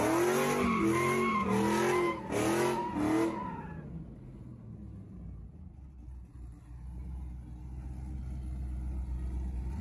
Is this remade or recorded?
recorded